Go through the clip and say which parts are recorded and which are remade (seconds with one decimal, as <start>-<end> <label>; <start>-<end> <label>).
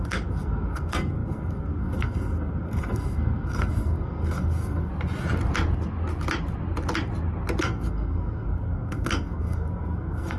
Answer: 0.0-4.9 remade; 4.9-7.6 recorded; 7.6-10.4 remade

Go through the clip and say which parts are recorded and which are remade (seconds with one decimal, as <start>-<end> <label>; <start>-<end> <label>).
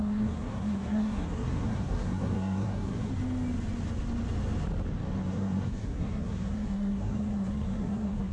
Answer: 0.0-3.1 remade; 3.1-5.3 recorded; 5.3-8.3 remade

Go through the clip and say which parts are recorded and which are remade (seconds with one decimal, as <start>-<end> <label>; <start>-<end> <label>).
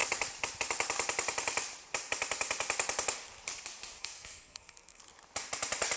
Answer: 0.0-4.0 recorded; 4.0-5.0 remade; 5.0-6.0 recorded